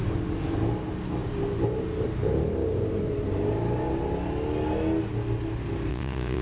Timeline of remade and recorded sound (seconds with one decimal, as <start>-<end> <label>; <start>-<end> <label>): 0.0-5.9 recorded; 5.9-6.4 remade